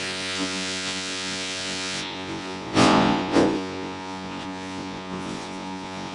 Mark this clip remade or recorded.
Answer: remade